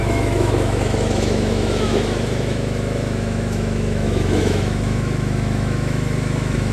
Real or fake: fake